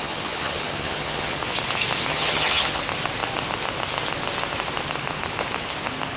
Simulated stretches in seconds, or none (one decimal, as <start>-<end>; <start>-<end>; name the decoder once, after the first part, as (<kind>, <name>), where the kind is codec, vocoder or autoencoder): 0.0-1.4 (vocoder, HiFi-GAN); 2.1-2.8

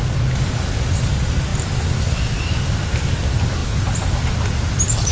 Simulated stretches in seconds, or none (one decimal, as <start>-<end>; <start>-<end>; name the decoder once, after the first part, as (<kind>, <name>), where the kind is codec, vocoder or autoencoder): none